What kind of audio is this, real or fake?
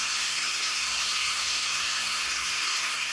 fake